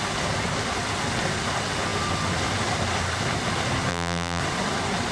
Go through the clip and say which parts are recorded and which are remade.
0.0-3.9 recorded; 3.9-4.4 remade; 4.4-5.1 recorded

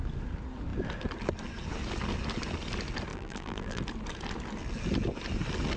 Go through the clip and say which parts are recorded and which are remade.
0.0-3.1 recorded; 3.1-3.8 remade; 3.8-5.8 recorded